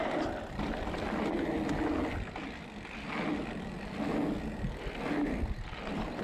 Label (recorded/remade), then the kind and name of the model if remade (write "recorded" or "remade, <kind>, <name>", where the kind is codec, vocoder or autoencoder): recorded